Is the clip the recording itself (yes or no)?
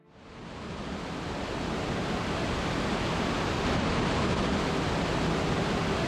yes